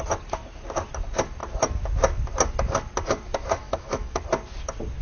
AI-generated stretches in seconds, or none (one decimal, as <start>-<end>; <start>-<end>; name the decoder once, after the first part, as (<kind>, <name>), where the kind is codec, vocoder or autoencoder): 3.6-4.2 (autoencoder, DAC-VAE)